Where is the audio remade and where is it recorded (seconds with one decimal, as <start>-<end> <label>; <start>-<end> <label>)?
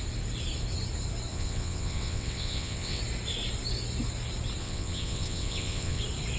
0.0-1.3 recorded; 1.3-3.0 remade; 3.0-4.6 recorded; 4.6-6.0 remade; 6.0-6.4 recorded